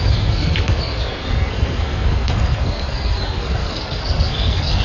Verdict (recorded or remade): remade